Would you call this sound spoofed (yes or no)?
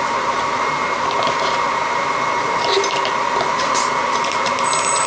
yes